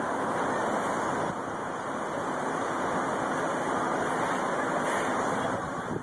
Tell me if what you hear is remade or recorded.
recorded